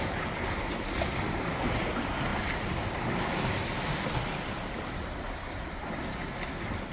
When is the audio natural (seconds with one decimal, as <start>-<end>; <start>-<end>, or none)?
0.0-2.3; 5.8-6.9